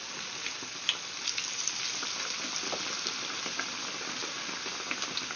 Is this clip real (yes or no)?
yes